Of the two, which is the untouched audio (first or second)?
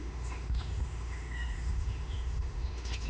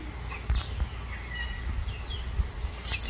second